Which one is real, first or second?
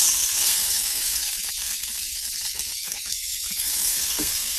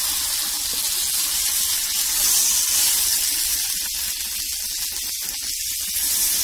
second